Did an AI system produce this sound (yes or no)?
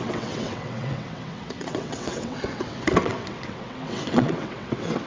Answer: yes